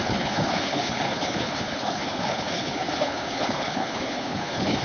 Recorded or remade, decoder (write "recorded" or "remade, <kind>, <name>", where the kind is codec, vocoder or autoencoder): remade, codec, HILCodec